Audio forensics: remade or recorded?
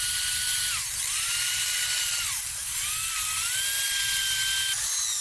recorded